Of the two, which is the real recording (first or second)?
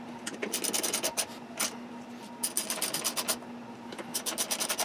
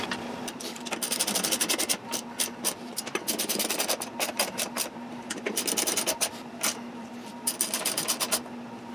first